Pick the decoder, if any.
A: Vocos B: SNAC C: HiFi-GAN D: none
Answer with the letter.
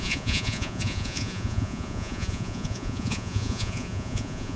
A